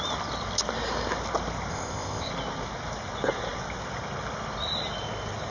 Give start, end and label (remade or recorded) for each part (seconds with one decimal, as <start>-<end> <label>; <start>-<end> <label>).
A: 0.0-1.7 recorded; 1.7-2.3 remade; 2.3-5.5 recorded